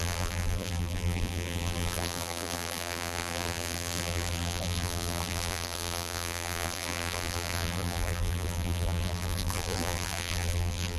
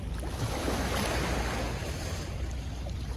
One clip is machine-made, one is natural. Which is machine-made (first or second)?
first